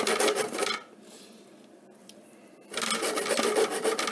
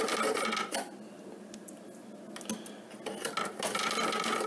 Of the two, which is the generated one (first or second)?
first